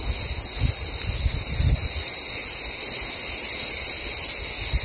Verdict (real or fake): real